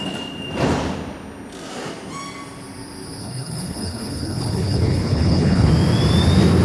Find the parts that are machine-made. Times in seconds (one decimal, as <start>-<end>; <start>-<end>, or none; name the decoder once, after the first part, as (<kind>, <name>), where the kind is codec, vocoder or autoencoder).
3.2-5.7 (codec, HILCodec)